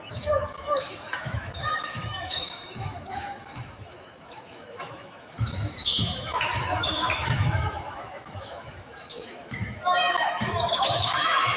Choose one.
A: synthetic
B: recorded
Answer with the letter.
A